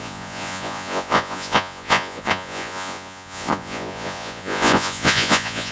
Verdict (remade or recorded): remade